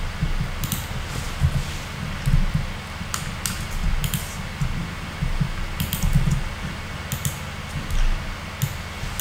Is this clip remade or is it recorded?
recorded